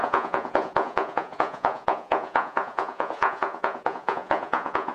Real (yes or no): no